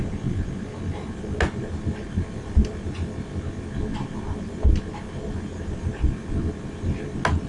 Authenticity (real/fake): real